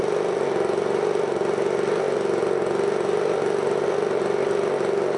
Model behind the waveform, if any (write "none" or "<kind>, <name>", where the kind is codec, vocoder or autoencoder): none